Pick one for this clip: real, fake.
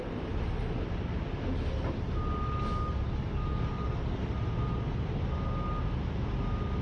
real